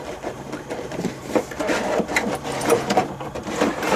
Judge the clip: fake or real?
fake